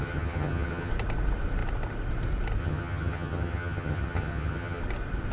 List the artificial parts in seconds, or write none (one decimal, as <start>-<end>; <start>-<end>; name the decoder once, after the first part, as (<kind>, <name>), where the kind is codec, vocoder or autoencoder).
0.0-0.9 (vocoder, HiFi-GAN); 2.6-4.8